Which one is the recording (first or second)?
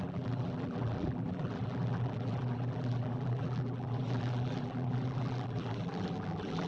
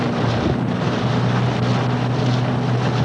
second